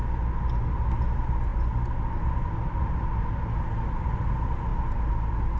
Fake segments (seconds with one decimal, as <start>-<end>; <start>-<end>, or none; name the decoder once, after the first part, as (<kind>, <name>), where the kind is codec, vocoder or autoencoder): none